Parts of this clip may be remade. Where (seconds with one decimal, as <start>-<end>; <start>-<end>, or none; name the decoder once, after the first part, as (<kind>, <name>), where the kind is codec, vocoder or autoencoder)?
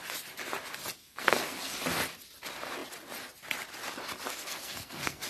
1.0-1.8 (codec, SNAC); 4.3-5.3